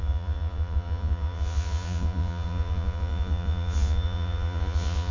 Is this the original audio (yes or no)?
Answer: no